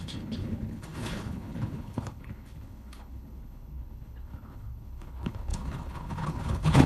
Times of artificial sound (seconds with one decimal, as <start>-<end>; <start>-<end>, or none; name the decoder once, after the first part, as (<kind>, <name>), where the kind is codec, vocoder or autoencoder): 0.0-6.9 (codec, HILCodec)